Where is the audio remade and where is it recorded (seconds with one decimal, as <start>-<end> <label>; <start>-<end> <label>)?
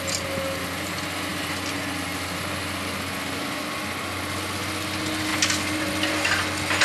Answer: 0.0-6.8 recorded